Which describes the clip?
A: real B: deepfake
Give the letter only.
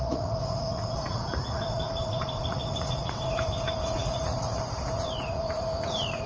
B